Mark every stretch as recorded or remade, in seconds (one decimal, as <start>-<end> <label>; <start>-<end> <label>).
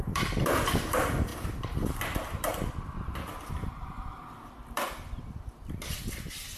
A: 0.0-6.6 recorded